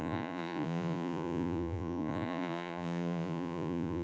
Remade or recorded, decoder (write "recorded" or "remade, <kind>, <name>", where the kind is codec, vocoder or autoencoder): remade, vocoder, Vocos